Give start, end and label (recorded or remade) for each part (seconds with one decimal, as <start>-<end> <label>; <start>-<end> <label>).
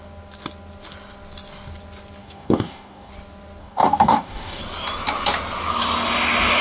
0.0-2.2 recorded; 2.2-3.1 remade; 3.1-3.6 recorded; 3.6-4.6 remade; 4.6-6.6 recorded